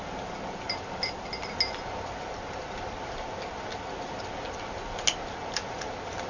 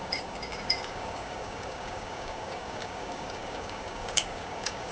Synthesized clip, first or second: second